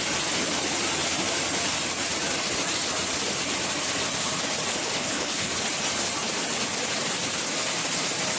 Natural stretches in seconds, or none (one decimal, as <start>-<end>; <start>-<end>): 0.0-4.7; 5.5-8.4